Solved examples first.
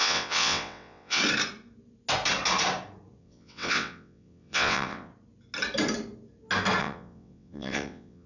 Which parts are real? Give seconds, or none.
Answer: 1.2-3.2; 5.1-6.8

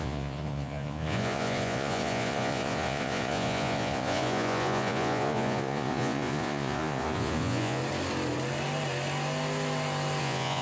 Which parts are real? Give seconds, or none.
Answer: 7.8-10.2

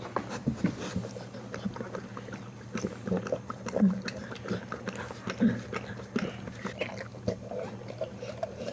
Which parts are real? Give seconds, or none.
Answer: 0.0-0.4; 1.0-8.7

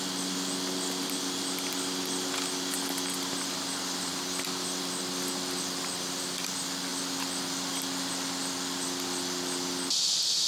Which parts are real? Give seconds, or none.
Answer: 0.0-10.5

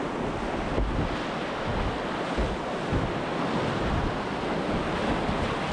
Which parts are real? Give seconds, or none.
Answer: 0.0-5.7